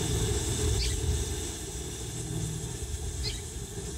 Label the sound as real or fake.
real